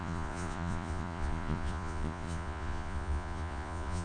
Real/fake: fake